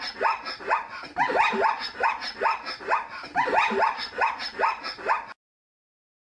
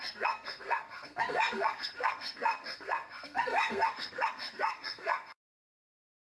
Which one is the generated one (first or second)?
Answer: second